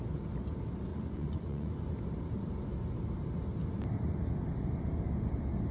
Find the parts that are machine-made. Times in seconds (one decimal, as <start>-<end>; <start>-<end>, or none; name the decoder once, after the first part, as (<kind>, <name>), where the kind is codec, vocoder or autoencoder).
0.9-1.7 (vocoder, Vocos)